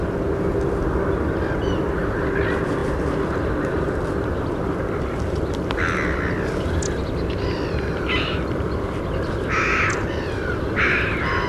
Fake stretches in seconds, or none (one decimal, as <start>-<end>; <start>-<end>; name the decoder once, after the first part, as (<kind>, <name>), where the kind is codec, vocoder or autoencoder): none